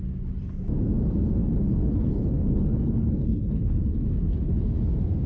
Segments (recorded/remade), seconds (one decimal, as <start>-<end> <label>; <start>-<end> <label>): 0.0-1.4 recorded; 1.4-4.6 remade; 4.6-5.3 recorded